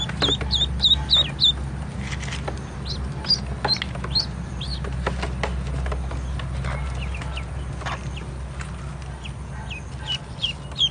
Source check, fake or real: real